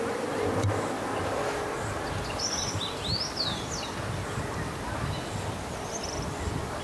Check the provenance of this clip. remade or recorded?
recorded